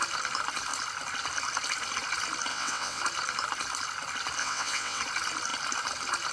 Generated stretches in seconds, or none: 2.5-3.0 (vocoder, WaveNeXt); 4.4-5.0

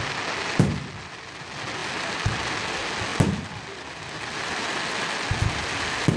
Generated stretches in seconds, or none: none

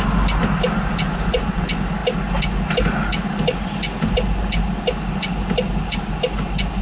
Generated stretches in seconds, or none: none